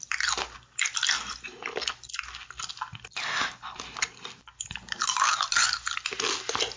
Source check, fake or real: real